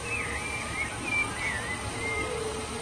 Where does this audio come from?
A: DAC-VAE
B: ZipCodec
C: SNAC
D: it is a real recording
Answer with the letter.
D